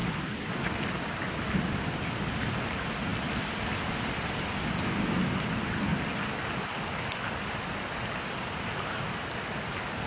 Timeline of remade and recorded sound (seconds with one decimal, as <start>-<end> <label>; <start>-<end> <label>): 0.0-10.1 recorded